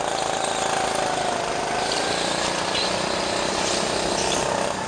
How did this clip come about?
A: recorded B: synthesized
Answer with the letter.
A